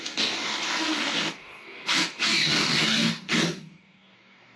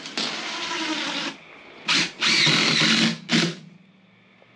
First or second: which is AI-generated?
first